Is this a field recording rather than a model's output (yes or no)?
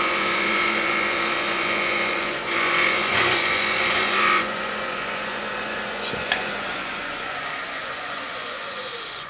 no